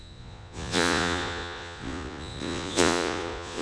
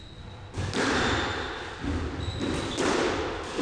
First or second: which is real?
second